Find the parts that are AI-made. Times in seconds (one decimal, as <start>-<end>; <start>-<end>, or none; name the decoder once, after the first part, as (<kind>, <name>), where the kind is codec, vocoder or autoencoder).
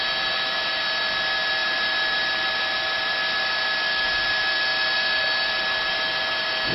none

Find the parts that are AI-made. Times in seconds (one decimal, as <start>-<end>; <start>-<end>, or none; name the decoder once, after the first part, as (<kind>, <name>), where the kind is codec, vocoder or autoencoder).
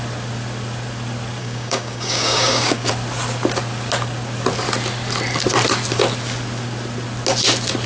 1.4-2.9 (codec, DAC)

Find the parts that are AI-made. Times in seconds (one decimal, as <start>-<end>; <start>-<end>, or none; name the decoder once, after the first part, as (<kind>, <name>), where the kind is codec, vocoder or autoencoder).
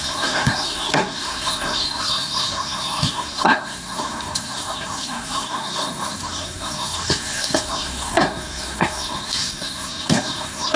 0.0-10.8 (codec, SNAC)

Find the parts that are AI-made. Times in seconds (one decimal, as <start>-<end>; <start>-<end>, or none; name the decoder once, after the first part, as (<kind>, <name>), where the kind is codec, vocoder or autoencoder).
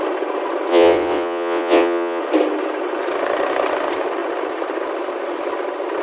0.7-2.2 (vocoder, WaveNeXt)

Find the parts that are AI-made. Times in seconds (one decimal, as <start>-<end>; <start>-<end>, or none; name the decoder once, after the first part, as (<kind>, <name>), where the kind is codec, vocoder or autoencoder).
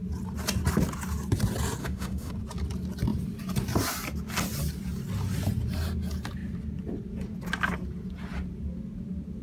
1.8-2.3 (autoencoder, DAC-VAE)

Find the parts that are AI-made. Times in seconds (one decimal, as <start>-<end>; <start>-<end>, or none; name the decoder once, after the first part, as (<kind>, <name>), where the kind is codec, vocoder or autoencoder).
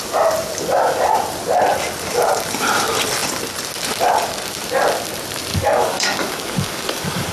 5.5-7.3 (codec, DAC)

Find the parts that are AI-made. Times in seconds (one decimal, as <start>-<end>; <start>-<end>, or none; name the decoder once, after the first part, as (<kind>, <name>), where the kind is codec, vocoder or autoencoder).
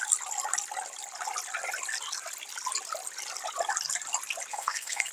4.5-5.1 (codec, SNAC)